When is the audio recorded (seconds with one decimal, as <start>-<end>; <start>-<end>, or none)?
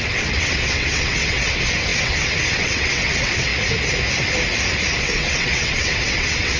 3.5-5.0